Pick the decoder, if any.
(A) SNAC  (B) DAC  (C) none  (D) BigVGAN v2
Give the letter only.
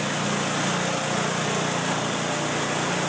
C